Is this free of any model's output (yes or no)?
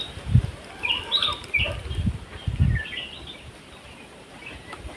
yes